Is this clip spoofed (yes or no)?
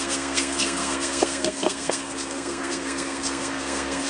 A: yes